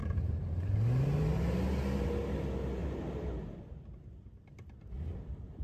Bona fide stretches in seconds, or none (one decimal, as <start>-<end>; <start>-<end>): 0.8-2.8; 3.5-5.6